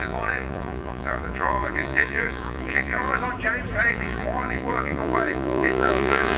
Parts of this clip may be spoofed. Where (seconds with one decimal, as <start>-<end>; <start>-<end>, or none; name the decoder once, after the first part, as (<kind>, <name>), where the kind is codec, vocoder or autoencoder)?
0.0-3.2 (vocoder, Vocos); 3.9-6.4